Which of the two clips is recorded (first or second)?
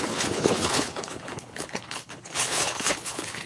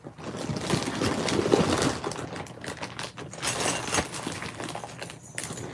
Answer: second